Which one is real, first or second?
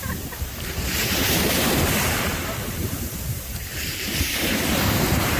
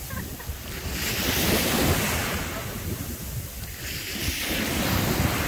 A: second